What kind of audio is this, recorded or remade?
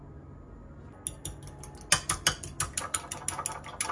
recorded